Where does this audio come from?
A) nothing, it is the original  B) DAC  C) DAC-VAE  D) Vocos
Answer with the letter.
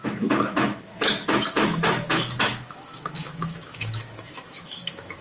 C